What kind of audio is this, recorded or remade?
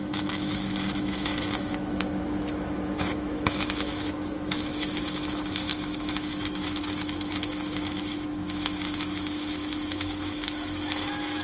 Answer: remade